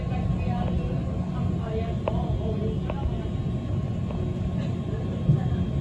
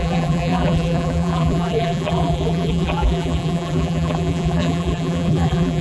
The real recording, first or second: first